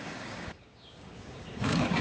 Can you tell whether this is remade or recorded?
remade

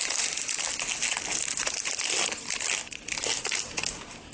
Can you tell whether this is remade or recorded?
recorded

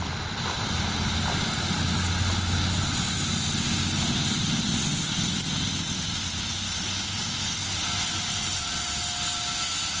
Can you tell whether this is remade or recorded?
recorded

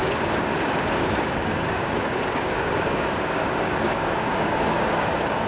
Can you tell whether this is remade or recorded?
remade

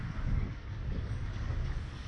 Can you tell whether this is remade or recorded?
remade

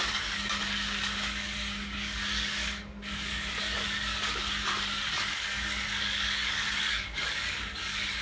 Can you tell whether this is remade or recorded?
remade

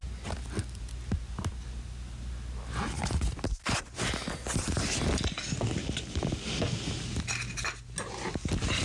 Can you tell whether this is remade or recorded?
recorded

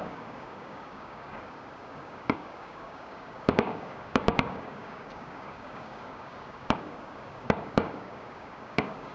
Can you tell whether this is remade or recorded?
remade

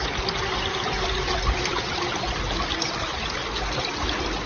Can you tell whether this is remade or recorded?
recorded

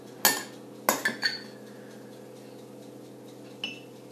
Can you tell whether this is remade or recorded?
recorded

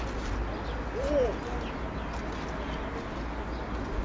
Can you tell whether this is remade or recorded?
recorded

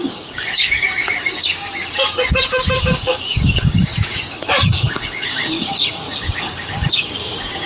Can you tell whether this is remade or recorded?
remade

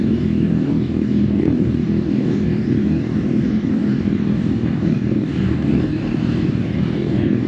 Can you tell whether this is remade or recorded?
remade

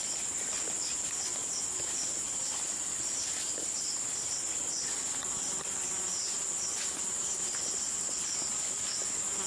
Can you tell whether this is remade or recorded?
recorded